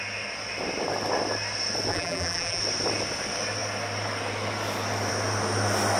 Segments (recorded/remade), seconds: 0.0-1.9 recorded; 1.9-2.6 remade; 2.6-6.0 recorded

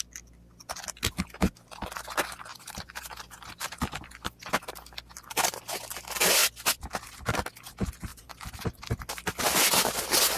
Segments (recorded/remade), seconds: 0.0-2.5 recorded; 2.5-4.1 remade; 4.1-8.1 recorded; 8.1-8.7 remade; 8.7-10.4 recorded

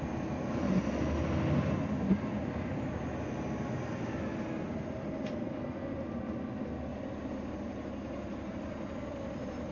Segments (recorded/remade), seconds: 0.0-9.7 recorded

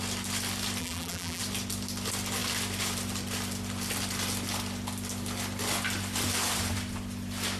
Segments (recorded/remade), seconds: 0.0-0.8 recorded; 0.8-1.4 remade; 1.4-7.6 recorded

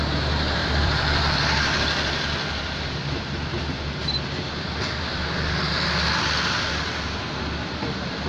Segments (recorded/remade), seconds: 0.0-0.6 recorded; 0.6-5.6 remade; 5.6-8.3 recorded

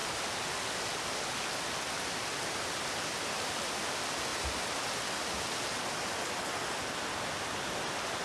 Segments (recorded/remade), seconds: 0.0-0.5 remade; 0.5-4.3 recorded; 4.3-4.9 remade; 4.9-8.2 recorded

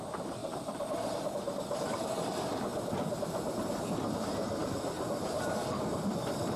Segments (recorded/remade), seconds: 0.0-0.4 recorded; 0.4-1.2 remade; 1.2-4.6 recorded; 4.6-5.4 remade; 5.4-6.6 recorded